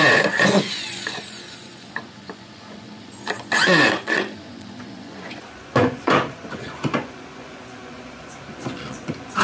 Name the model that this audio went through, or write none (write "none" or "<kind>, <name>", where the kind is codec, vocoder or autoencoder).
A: vocoder, Vocos